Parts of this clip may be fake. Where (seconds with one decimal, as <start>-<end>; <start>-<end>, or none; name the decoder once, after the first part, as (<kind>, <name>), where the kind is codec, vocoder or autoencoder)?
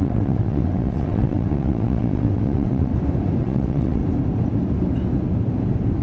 0.0-2.9 (vocoder, WaveNeXt); 3.4-4.0